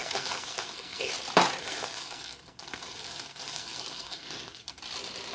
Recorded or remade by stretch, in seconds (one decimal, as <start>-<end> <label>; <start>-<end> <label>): 0.0-1.1 remade; 1.1-1.6 recorded; 1.6-4.8 remade; 4.8-5.3 recorded